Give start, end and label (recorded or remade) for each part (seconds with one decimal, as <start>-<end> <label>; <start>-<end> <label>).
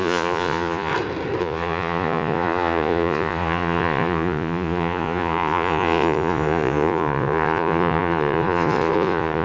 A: 0.0-0.9 remade; 0.9-1.4 recorded; 1.4-9.4 remade